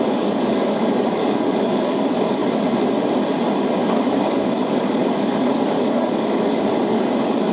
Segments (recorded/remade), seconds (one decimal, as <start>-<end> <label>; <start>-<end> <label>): 0.0-2.4 remade; 2.4-3.8 recorded; 3.8-7.5 remade